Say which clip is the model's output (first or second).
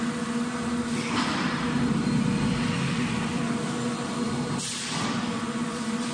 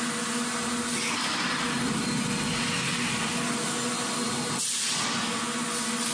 first